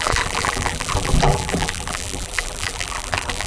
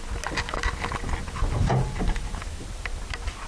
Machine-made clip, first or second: first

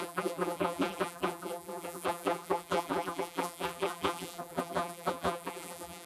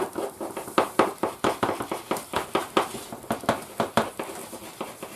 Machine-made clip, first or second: first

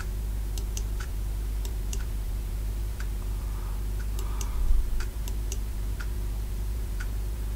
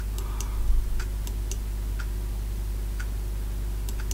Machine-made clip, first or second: first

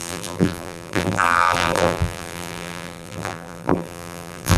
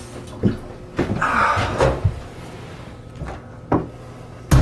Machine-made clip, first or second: first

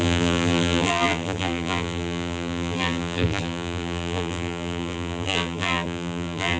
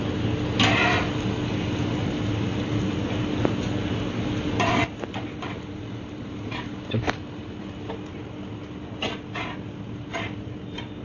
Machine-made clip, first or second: first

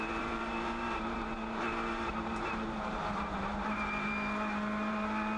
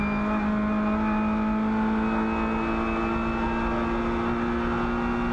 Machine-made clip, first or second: first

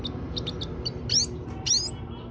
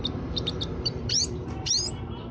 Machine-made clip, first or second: second